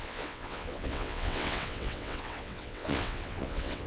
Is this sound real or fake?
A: fake